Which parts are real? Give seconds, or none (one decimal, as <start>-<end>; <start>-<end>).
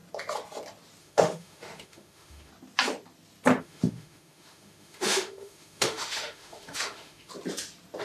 0.0-1.0; 2.5-3.6; 7.3-8.0